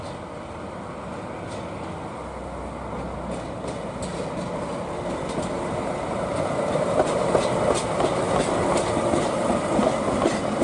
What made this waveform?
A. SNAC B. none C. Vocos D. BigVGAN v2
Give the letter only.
B